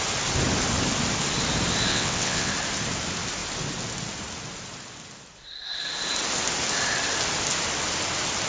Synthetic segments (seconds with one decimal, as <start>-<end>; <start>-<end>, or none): 1.9-2.5